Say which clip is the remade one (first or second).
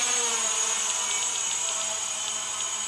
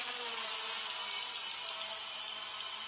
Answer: second